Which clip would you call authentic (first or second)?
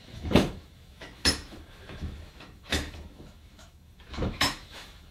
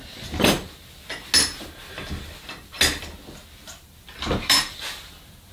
second